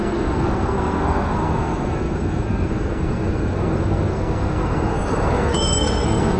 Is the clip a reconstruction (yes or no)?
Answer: yes